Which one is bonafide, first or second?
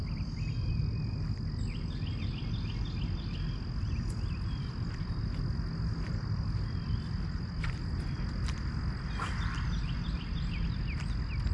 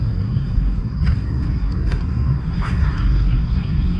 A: first